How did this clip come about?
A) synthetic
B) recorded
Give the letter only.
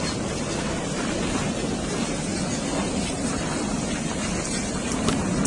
B